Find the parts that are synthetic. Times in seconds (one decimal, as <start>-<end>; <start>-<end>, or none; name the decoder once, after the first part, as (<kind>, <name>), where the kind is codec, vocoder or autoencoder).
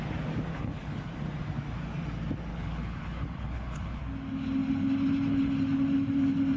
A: 0.5-1.1 (codec, HILCodec); 2.5-4.0